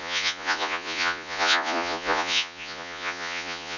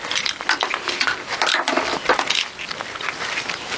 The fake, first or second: first